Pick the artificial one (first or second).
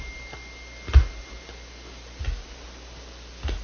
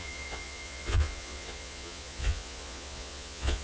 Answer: second